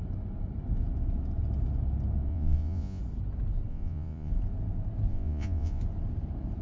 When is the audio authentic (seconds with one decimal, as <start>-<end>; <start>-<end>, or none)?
0.0-2.3; 3.0-3.7; 4.3-5.1; 5.8-6.6